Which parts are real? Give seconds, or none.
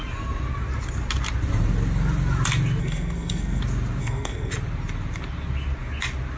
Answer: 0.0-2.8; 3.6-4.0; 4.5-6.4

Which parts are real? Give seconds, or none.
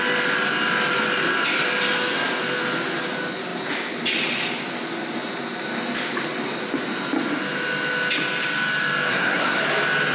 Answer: 0.0-9.1; 9.6-10.1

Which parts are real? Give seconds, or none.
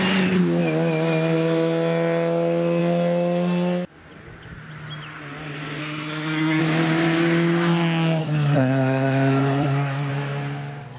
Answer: 0.0-5.8; 6.6-8.2; 10.1-11.0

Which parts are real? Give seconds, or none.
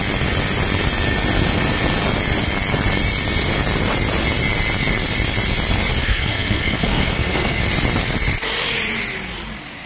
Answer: 0.0-6.0; 7.6-9.9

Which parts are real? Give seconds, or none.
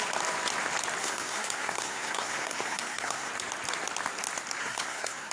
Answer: 0.0-1.0; 3.3-4.6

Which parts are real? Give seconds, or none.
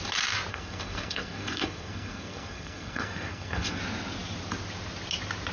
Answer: 0.0-0.5; 3.8-5.5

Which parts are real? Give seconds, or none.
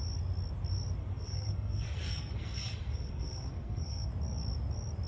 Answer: 0.0-1.0; 4.1-5.1